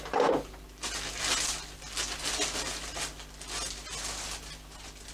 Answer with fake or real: real